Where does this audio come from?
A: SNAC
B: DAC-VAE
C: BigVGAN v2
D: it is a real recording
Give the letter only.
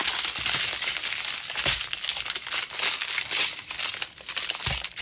D